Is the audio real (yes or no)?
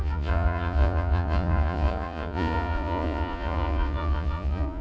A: no